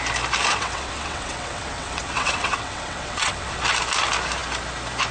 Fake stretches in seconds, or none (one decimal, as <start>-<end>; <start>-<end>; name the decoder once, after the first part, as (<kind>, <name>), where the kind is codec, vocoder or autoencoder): 0.5-3.6 (vocoder, WaveNeXt)